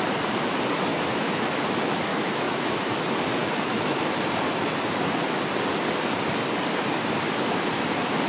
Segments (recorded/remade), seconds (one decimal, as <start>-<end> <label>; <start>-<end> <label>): 0.0-0.9 recorded; 0.9-1.6 remade; 1.6-2.1 recorded; 2.1-3.0 remade; 3.0-3.4 recorded; 3.4-4.0 remade; 4.0-8.3 recorded